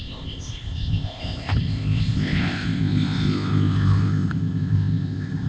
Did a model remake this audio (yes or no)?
yes